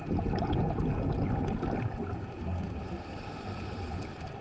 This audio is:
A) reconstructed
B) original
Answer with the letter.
B